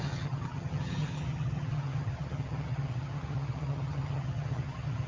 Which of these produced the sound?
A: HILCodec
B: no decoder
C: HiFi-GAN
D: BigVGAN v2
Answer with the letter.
C